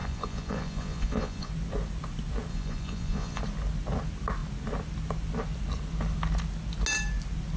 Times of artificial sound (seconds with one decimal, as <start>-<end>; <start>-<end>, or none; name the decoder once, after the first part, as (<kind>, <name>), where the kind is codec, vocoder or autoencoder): 0.0-1.5 (vocoder, Vocos); 2.5-3.4